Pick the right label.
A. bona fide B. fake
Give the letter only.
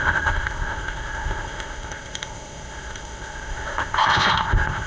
B